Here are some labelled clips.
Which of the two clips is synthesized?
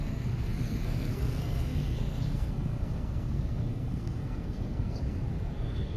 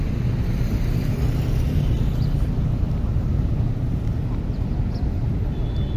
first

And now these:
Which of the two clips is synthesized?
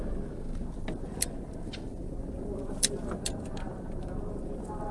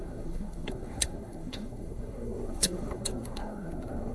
second